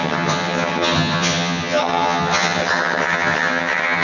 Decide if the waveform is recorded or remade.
remade